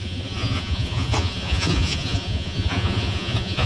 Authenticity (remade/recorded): remade